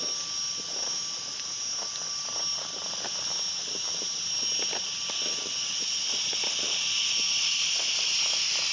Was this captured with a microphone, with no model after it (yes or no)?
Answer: yes